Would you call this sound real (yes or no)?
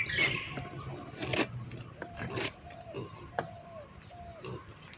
yes